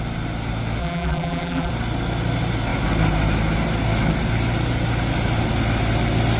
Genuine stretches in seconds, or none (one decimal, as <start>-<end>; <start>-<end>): 0.0-0.8; 1.7-6.4